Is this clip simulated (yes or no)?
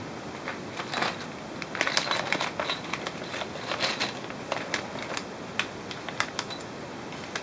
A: no